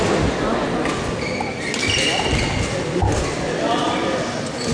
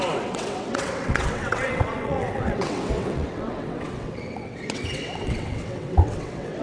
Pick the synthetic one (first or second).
second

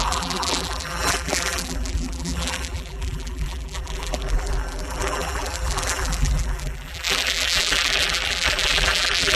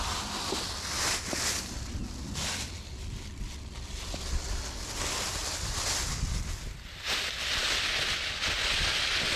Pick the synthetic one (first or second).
first